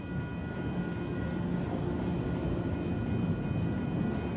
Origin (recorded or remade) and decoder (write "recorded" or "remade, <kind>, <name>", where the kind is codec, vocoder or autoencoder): recorded